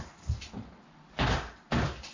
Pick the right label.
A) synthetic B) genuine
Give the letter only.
B